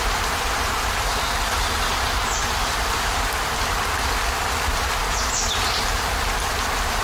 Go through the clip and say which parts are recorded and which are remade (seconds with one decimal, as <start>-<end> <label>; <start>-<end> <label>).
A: 0.0-7.0 remade